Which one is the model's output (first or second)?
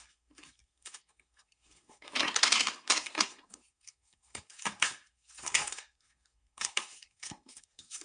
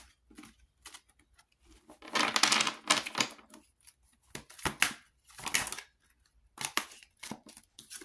first